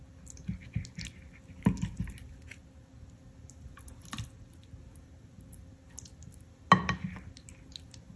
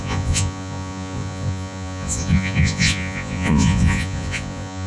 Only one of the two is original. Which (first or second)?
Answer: first